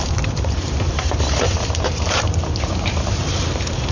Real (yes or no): no